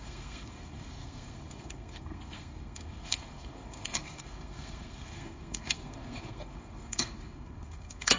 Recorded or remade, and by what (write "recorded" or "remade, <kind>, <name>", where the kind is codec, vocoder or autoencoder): remade, codec, SNAC